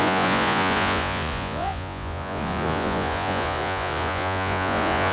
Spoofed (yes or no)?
yes